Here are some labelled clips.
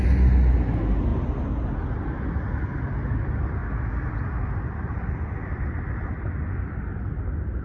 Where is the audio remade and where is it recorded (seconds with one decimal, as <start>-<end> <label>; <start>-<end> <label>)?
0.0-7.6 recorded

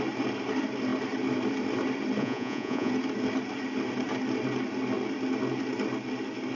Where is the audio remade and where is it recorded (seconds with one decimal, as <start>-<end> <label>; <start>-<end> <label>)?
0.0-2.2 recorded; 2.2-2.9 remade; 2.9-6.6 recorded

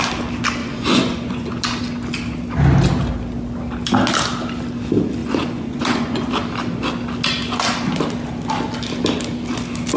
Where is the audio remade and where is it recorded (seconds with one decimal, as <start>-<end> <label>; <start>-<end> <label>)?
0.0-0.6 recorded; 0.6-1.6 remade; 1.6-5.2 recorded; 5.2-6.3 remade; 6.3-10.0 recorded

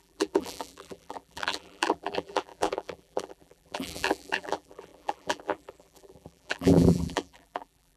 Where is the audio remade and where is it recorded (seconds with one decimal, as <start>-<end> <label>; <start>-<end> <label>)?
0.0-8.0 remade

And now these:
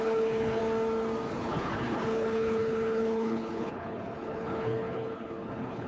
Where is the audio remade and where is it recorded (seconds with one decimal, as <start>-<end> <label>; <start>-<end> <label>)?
0.0-0.6 remade; 0.6-1.3 recorded; 1.3-5.9 remade

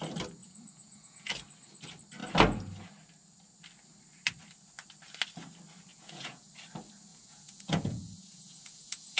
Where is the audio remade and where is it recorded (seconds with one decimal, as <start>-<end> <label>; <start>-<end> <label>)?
0.0-0.4 recorded; 0.4-1.3 remade; 1.3-5.9 recorded; 5.9-6.5 remade; 6.5-7.1 recorded; 7.1-9.2 remade